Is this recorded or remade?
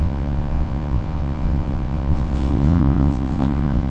remade